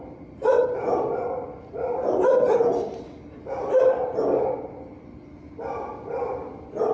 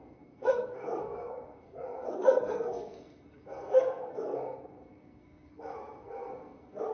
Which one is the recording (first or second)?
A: first